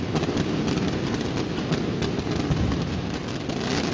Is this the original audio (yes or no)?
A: yes